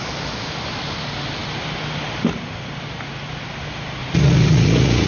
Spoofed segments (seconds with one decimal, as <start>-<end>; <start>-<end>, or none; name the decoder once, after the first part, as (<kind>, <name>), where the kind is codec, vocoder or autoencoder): 4.0-5.1 (vocoder, Vocos)